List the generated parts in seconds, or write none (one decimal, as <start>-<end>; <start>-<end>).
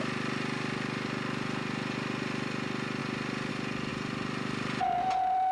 3.9-5.0